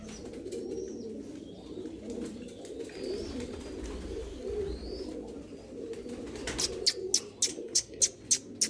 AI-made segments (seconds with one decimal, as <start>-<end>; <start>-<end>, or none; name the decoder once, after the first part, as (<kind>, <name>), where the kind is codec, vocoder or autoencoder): 7.5-8.0 (codec, SNAC)